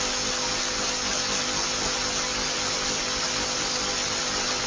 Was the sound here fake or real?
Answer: real